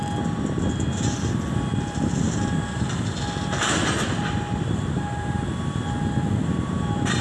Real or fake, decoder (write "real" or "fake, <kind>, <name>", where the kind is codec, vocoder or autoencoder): real